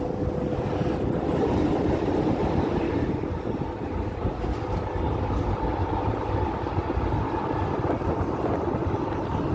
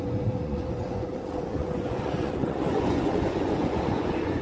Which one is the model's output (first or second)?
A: second